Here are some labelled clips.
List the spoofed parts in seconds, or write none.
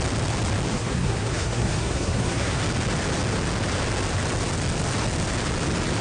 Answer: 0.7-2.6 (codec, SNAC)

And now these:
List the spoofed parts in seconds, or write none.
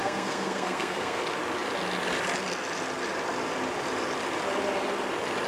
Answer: 0.0-1.2 (codec, SNAC)